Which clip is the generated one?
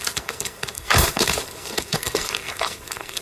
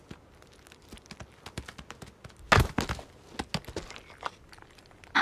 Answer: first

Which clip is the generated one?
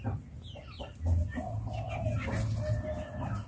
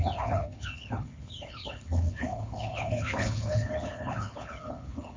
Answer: second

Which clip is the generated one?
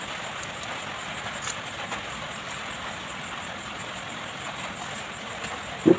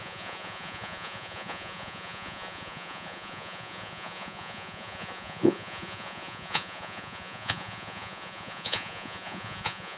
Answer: second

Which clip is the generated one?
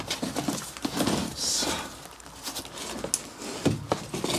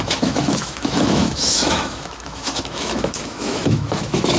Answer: second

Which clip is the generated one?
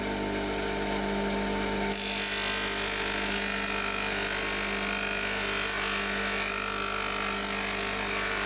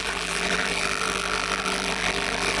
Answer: second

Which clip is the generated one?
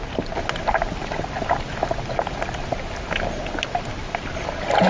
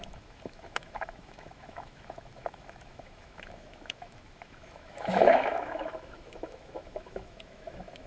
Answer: second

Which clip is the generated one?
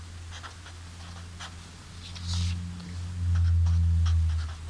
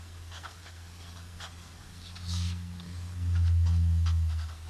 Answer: second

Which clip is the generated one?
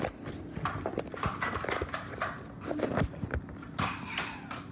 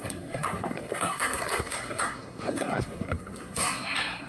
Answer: second